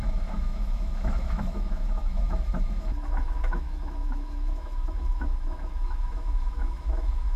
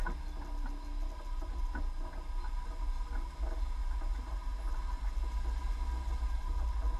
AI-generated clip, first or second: first